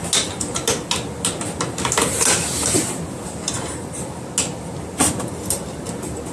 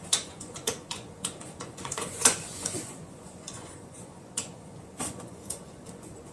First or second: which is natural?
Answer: first